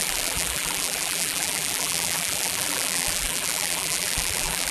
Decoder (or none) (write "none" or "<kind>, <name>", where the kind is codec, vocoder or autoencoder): vocoder, BigVGAN v2